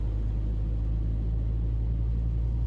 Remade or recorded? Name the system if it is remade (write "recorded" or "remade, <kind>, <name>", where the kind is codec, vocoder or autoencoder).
recorded